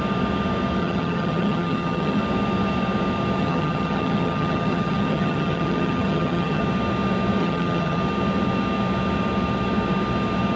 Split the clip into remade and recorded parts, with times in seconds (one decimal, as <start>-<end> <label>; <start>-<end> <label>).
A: 0.0-0.8 recorded; 0.8-2.2 remade; 2.2-3.4 recorded; 3.4-6.6 remade; 6.6-7.4 recorded; 7.4-8.0 remade; 8.0-10.6 recorded